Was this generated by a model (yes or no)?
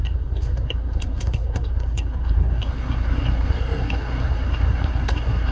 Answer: yes